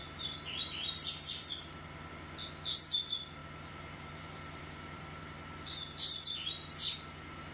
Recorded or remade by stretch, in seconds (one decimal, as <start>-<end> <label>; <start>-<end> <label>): 0.0-2.1 remade; 2.1-3.4 recorded; 3.4-5.3 remade; 5.3-7.5 recorded